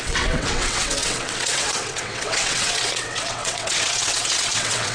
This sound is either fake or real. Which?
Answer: fake